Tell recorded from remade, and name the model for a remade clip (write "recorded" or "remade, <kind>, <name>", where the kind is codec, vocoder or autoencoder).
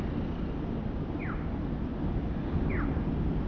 recorded